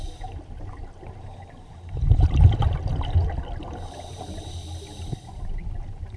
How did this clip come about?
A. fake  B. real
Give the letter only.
B